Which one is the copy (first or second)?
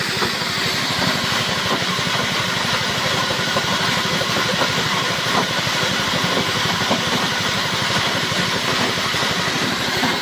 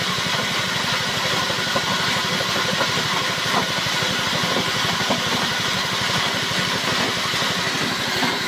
first